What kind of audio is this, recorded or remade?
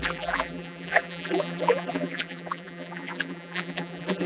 remade